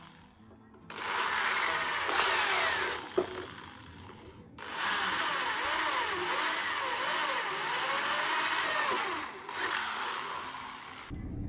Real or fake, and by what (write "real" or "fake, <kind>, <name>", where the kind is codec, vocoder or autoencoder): real